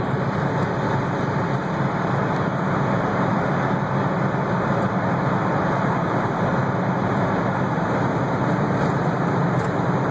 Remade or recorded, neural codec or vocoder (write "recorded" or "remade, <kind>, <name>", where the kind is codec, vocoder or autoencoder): recorded